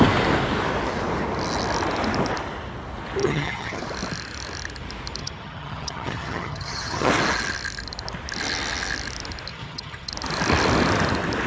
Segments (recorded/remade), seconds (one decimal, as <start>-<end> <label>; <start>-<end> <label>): 0.0-3.2 recorded; 3.2-3.8 remade; 3.8-5.2 recorded; 5.2-7.1 remade; 7.1-9.5 recorded; 9.5-10.1 remade; 10.1-11.5 recorded